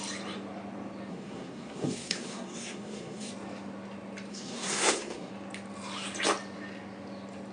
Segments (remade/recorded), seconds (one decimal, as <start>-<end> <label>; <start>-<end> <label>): 0.0-1.1 recorded; 1.1-3.3 remade; 3.3-4.3 recorded; 4.3-5.3 remade; 5.3-7.5 recorded